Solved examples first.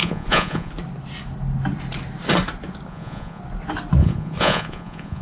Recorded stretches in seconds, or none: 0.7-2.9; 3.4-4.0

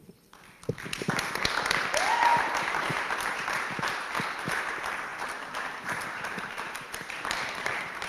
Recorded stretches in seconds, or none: 0.0-2.3; 3.9-5.1

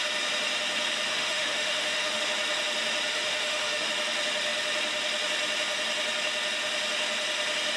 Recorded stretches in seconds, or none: 0.0-1.1; 2.2-3.1; 3.9-7.8

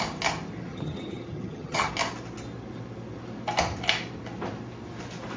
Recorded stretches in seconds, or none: 0.0-0.7; 1.9-5.4